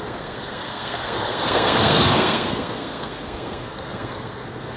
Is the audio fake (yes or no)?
yes